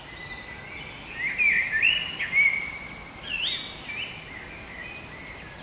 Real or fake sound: real